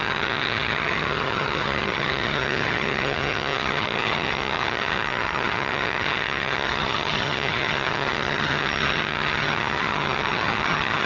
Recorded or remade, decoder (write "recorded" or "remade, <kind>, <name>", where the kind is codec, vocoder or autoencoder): remade, vocoder, HiFi-GAN